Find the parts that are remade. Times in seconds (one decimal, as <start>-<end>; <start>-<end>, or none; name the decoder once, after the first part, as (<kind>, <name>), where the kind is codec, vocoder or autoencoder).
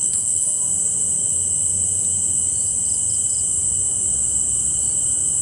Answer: 0.0-0.6 (codec, SNAC)